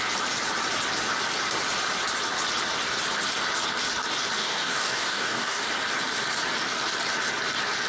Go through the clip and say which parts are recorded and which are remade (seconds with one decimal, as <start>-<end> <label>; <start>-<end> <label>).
0.0-4.4 recorded; 4.4-5.7 remade; 5.7-7.9 recorded